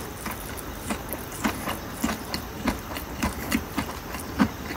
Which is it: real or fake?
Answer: real